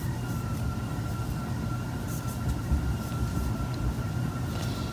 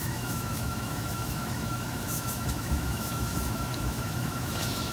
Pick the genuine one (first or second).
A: first